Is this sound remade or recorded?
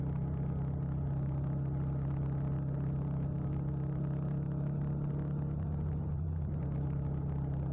recorded